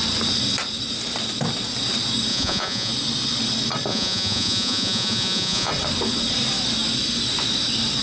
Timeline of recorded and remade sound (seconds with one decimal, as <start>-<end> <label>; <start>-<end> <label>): 0.0-2.3 recorded; 2.3-2.9 remade; 2.9-3.9 recorded; 3.9-5.7 remade; 5.7-8.0 recorded